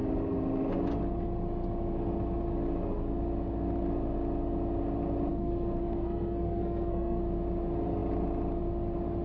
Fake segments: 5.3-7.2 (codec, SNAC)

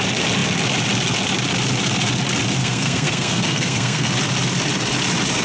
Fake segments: 2.6-4.1 (codec, SNAC)

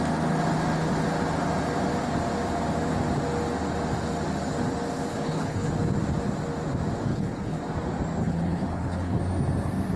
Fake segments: 5.1-5.7 (codec, HILCodec); 7.1-7.6; 8.2-9.2

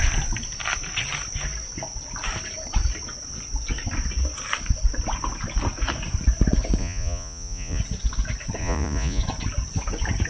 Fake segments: 6.8-7.8 (vocoder, Vocos); 8.6-9.2

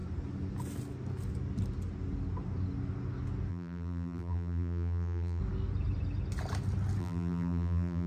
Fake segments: 3.5-5.4 (vocoder, BigVGAN v2); 7.0-8.1

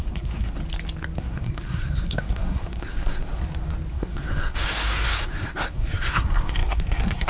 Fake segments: 0.0-0.6 (codec, SNAC); 1.2-3.4; 3.9-7.3